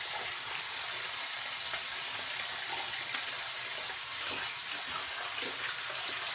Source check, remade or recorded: recorded